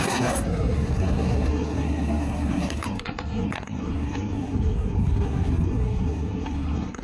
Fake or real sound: fake